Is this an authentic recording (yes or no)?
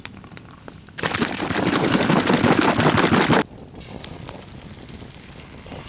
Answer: yes